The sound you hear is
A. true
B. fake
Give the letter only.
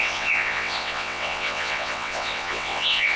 B